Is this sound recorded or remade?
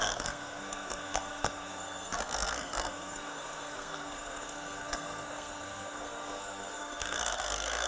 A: remade